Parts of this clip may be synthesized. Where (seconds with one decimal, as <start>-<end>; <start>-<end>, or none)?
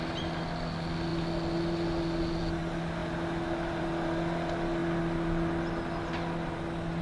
none